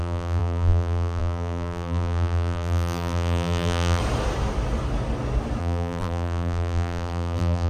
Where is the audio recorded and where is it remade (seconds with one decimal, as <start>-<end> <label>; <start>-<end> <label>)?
0.0-4.0 remade; 4.0-5.6 recorded; 5.6-7.7 remade